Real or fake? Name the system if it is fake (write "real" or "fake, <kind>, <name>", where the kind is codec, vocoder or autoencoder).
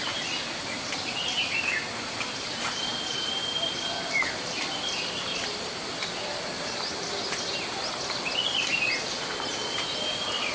real